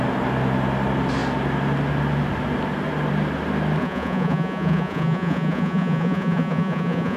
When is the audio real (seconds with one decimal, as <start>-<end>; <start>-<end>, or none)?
0.0-3.8